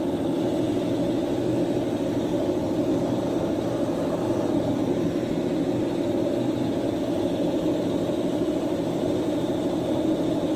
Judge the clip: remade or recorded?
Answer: recorded